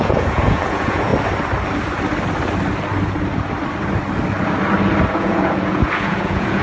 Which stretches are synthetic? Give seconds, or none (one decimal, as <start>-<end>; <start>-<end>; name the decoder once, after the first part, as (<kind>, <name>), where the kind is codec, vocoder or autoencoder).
0.0-1.1 (vocoder, Vocos); 5.1-6.6